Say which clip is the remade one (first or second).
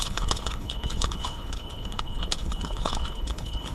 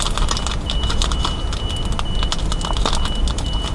first